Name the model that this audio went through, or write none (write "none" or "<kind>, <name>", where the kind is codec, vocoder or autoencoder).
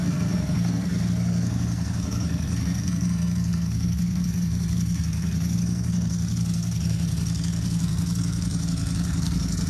codec, SNAC